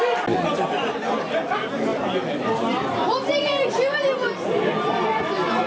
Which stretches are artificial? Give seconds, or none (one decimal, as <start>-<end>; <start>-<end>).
none